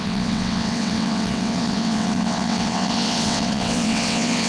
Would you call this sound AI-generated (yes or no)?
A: yes